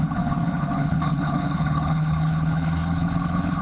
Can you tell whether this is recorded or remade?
remade